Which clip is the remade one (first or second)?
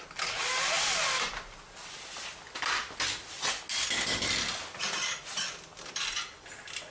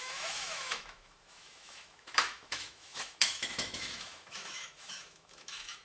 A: second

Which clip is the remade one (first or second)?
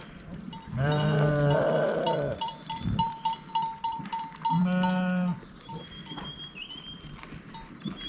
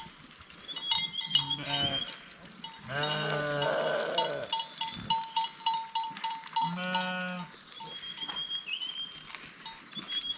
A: first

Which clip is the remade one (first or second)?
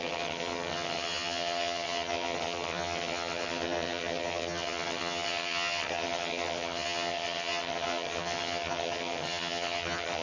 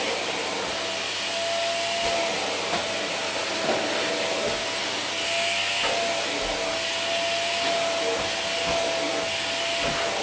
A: first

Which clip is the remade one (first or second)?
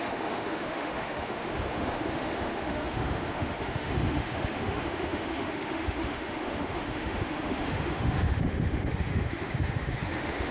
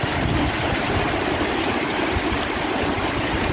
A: first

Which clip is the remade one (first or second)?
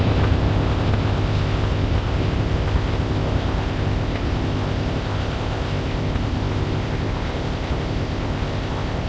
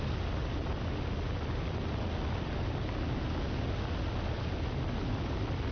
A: first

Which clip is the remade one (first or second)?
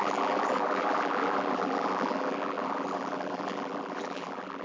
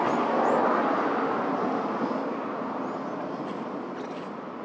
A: first